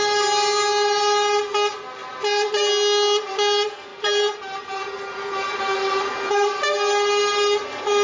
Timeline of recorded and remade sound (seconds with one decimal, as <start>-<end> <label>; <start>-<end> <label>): 0.0-3.9 recorded; 3.9-6.6 remade; 6.6-8.0 recorded

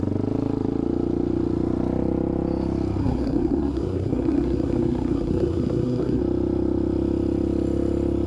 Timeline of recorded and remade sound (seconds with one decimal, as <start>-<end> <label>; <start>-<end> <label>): 0.0-3.0 recorded; 3.0-6.2 remade; 6.2-8.3 recorded

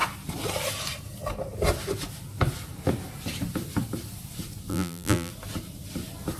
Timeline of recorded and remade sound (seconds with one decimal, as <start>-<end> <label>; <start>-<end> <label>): 0.0-4.7 recorded; 4.7-5.3 remade; 5.3-6.4 recorded